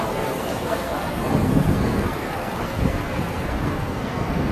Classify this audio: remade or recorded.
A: remade